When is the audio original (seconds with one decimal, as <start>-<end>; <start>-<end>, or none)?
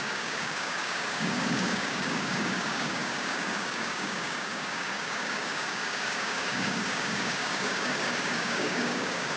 none